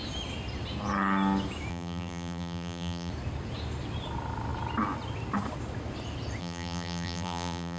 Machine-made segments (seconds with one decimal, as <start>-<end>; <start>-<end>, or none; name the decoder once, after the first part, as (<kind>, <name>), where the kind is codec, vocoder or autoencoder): 1.7-3.1 (vocoder, BigVGAN v2); 6.4-7.8